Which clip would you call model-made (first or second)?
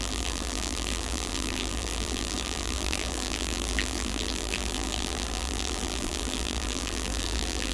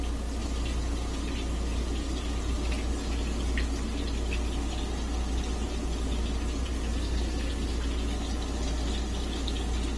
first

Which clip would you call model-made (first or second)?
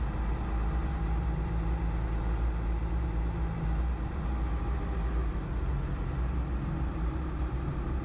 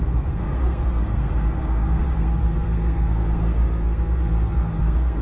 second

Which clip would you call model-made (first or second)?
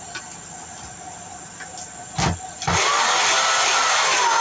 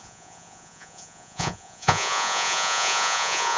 second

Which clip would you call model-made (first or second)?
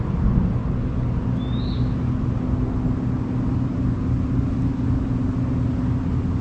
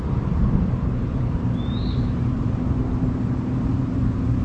second